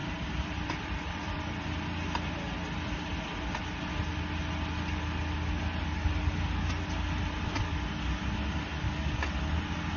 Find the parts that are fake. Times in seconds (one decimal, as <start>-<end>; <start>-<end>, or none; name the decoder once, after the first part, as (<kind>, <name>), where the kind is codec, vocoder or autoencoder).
0.0-1.8 (vocoder, BigVGAN v2); 7.2-7.8